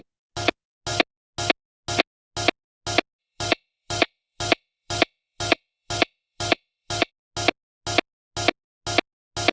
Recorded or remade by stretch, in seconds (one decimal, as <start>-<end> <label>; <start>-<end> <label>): 0.0-3.2 recorded; 3.2-7.1 remade; 7.1-9.5 recorded